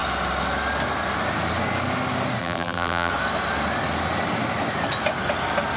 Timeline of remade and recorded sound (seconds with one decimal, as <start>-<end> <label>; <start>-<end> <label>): 0.0-2.4 recorded; 2.4-3.1 remade; 3.1-5.8 recorded